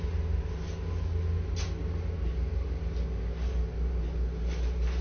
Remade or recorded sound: recorded